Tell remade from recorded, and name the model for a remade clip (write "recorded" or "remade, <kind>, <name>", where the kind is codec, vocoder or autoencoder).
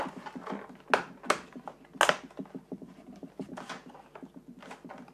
recorded